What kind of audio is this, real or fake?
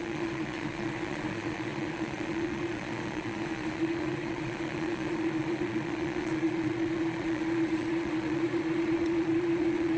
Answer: fake